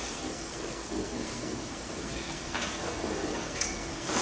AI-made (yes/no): yes